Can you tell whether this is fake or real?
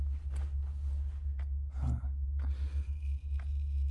real